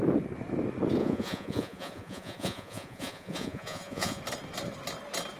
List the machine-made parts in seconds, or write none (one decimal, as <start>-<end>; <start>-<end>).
1.0-4.2